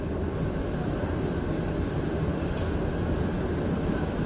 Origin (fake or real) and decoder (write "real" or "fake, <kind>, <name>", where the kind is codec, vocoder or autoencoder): real